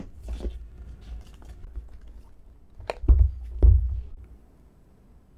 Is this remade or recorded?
recorded